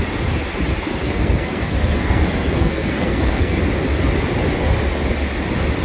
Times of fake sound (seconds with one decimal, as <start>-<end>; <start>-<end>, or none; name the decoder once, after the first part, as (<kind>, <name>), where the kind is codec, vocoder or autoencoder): 1.0-3.6 (codec, SNAC)